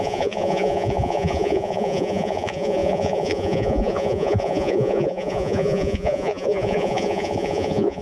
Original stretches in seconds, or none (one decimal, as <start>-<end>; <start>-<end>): none